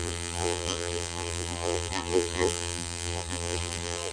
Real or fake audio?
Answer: fake